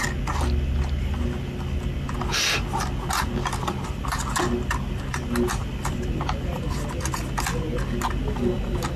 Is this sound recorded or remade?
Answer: recorded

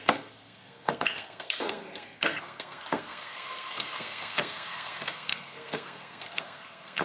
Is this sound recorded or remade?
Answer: remade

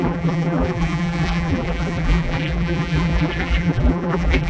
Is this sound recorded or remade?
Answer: remade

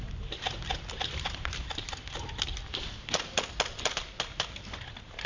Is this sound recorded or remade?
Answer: recorded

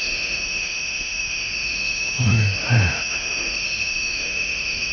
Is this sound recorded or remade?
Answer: remade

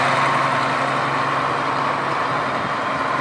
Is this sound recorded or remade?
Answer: recorded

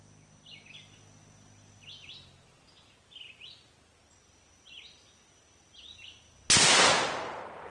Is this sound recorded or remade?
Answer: recorded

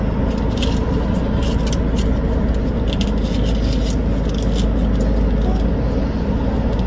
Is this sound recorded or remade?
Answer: recorded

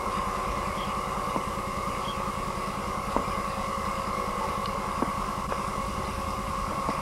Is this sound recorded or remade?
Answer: remade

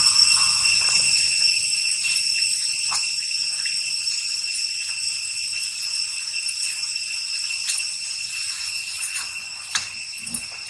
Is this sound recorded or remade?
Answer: remade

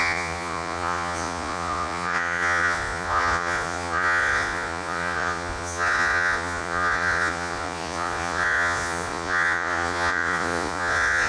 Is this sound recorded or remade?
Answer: remade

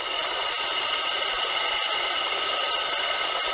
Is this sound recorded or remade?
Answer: recorded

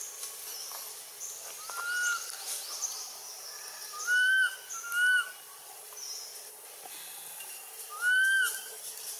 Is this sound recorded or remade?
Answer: recorded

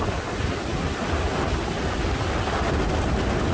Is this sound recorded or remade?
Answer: recorded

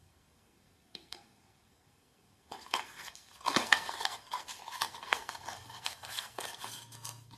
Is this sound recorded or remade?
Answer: remade